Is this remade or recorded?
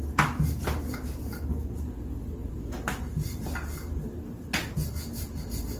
recorded